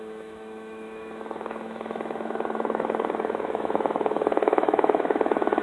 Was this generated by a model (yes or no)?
yes